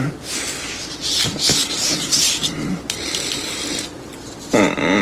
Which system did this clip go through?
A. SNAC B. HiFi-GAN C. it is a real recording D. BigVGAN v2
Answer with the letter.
C